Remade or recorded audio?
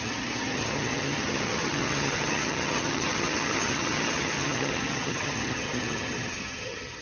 remade